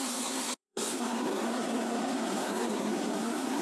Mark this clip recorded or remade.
remade